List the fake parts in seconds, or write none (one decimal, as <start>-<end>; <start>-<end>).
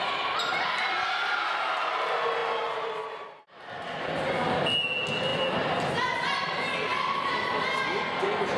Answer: 6.9-7.5